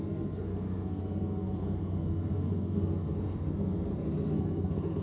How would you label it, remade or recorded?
remade